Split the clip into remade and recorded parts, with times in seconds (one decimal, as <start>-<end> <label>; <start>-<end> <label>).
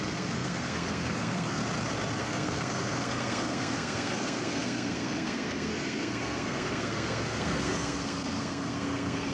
0.0-1.6 remade; 1.6-2.2 recorded; 2.2-9.3 remade